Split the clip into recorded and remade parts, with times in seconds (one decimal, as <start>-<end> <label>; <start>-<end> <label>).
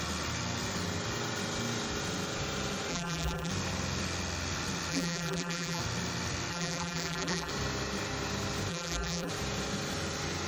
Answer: 0.0-2.9 recorded; 2.9-3.5 remade; 3.5-4.9 recorded; 4.9-5.8 remade; 5.8-6.5 recorded; 6.5-7.5 remade; 7.5-8.7 recorded; 8.7-9.3 remade; 9.3-10.5 recorded